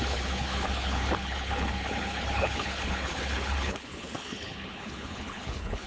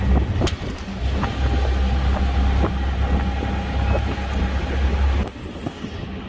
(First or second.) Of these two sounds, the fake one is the first